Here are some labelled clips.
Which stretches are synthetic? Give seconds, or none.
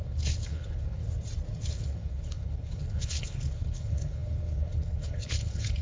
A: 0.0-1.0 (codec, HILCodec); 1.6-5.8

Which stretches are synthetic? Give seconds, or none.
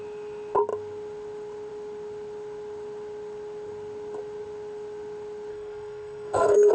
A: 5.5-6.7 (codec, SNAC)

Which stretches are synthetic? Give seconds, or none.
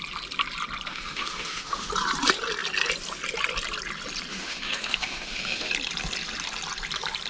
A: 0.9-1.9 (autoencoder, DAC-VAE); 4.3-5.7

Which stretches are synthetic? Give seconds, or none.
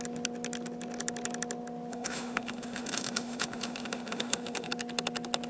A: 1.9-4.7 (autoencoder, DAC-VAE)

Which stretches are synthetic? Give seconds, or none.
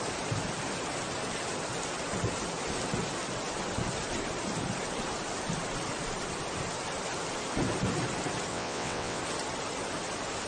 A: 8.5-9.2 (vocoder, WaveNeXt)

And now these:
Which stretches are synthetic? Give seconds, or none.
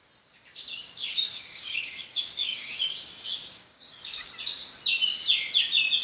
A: 0.7-4.3 (codec, DAC)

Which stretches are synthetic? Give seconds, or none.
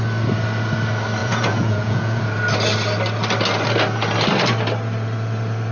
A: 1.2-2.2 (vocoder, Vocos)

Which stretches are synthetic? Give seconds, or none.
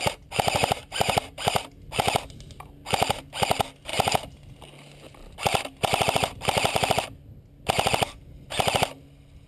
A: 0.6-1.7 (vocoder, BigVGAN v2)